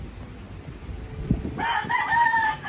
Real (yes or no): yes